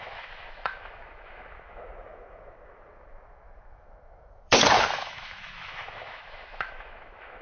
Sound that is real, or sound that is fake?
fake